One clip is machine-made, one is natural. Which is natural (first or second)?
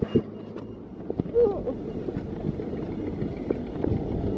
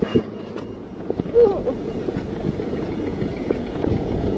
first